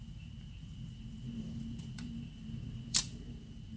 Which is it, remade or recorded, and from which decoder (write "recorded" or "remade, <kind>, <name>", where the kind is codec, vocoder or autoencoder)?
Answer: remade, vocoder, BigVGAN v2